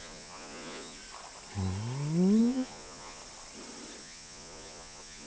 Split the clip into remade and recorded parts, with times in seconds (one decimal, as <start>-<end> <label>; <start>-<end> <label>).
0.0-1.0 remade; 1.0-2.4 recorded; 2.4-3.2 remade; 3.2-4.0 recorded; 4.0-5.3 remade